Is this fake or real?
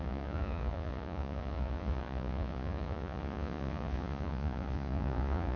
fake